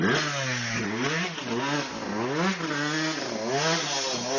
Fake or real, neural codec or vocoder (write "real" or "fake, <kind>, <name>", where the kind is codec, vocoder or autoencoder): real